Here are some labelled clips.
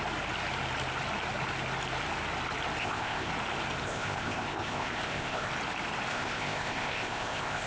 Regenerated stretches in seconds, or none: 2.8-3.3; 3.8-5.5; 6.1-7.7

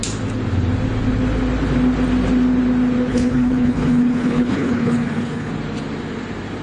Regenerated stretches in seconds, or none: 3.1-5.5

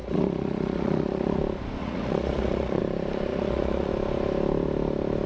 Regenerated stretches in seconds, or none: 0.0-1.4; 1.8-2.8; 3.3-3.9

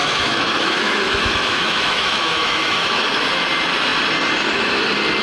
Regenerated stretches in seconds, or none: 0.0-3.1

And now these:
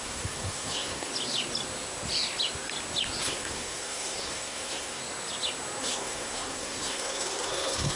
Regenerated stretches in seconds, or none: 0.0-1.1; 3.2-5.0; 5.8-8.0

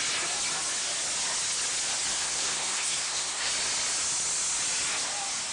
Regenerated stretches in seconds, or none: 2.1-3.5

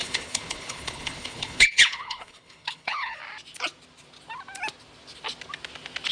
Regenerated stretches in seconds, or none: 0.0-3.2